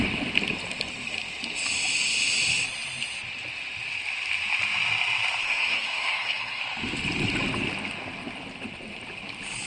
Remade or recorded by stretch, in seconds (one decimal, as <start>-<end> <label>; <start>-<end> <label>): 0.0-5.4 recorded; 5.4-6.6 remade; 6.6-9.7 recorded